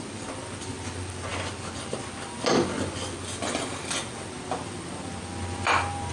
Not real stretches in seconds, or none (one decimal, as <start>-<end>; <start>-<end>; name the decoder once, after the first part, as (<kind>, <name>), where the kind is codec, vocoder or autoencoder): none